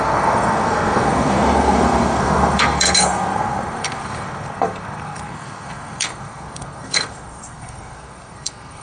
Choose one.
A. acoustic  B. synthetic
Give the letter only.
B